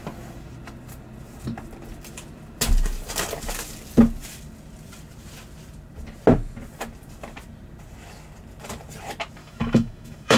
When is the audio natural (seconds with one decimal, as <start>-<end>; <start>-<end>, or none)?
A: 0.0-9.4